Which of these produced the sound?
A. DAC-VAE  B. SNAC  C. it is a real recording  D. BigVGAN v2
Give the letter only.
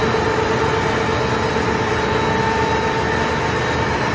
C